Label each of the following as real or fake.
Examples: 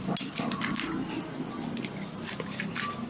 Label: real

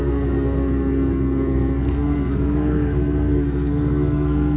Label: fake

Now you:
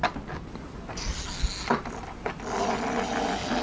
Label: real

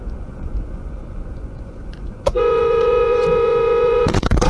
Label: fake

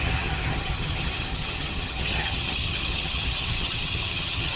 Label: fake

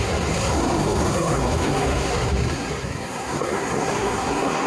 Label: fake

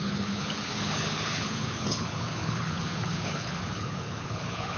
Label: fake